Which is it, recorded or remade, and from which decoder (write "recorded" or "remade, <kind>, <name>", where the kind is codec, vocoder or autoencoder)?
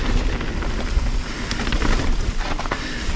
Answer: recorded